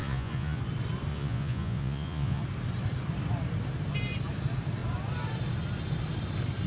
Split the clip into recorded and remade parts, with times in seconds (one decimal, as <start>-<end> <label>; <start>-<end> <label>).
0.0-0.6 remade; 0.6-1.1 recorded; 1.1-2.4 remade; 2.4-6.7 recorded